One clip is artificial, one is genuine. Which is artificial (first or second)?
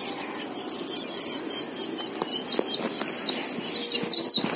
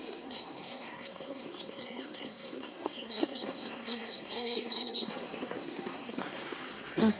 second